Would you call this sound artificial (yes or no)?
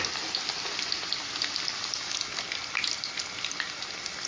no